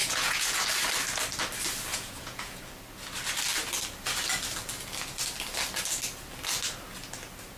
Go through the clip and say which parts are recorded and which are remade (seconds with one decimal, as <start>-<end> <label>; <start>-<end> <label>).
0.0-0.6 remade; 0.6-1.9 recorded; 1.9-2.6 remade; 2.6-7.6 recorded